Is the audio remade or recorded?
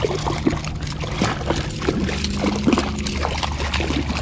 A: recorded